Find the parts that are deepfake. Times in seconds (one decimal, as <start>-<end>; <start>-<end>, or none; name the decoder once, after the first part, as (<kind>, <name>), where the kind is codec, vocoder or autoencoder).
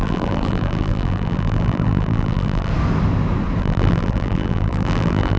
0.0-2.7 (vocoder, BigVGAN v2); 3.6-5.4